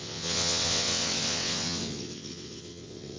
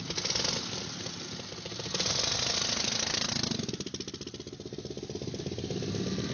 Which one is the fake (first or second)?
first